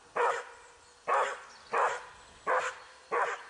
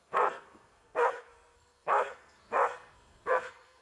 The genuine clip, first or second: first